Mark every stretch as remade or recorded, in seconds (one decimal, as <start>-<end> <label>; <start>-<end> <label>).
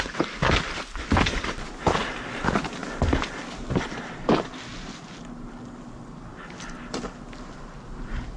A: 0.0-8.4 recorded